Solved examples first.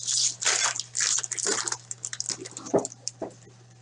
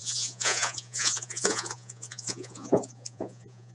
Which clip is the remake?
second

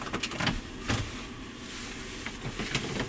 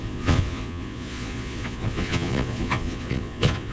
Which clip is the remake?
second